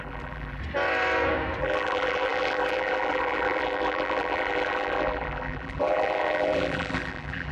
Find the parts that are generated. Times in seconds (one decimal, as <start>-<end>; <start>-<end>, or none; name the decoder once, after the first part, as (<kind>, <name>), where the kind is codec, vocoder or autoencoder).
0.0-0.6 (vocoder, BigVGAN v2); 1.6-7.5